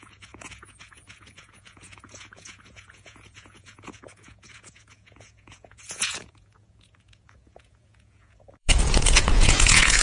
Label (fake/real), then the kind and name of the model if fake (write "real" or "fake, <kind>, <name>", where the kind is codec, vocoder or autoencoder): fake, vocoder, Vocos